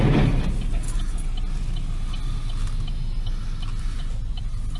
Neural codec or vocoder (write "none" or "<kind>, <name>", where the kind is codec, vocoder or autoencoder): none